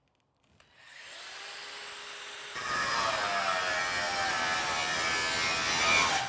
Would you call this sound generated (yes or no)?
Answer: no